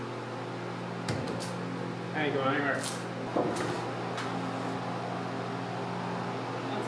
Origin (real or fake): real